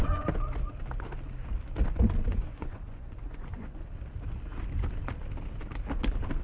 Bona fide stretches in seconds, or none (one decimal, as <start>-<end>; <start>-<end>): 0.0-2.3; 3.8-6.4